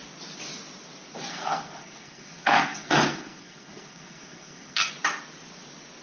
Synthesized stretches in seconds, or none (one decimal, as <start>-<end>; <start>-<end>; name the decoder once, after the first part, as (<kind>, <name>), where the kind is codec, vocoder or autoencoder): 1.3-4.9 (codec, SNAC)